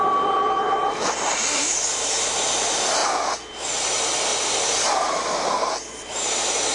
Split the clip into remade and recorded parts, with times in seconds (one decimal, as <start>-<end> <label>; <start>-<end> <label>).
0.0-3.0 remade; 3.0-3.5 recorded; 3.5-6.7 remade